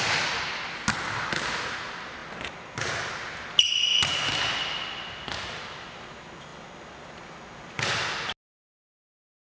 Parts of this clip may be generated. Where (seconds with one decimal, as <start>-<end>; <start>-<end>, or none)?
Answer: none